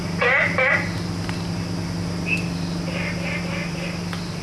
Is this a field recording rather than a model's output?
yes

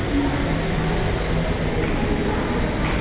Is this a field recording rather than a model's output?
yes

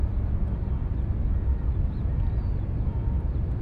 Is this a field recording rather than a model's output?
no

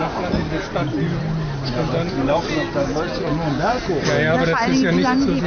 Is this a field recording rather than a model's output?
yes